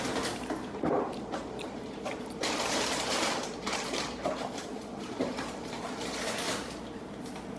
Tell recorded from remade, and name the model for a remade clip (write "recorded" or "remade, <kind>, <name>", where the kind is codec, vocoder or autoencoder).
remade, vocoder, BigVGAN v2